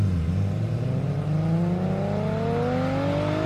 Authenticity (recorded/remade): recorded